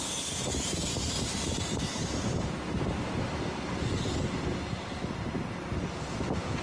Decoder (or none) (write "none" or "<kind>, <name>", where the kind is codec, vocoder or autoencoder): none